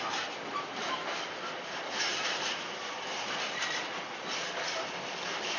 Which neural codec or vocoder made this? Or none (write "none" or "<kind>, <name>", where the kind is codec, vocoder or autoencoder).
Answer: none